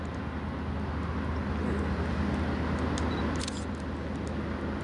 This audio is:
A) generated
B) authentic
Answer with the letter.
B